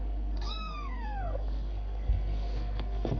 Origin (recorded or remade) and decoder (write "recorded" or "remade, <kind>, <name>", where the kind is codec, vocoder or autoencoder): remade, codec, SNAC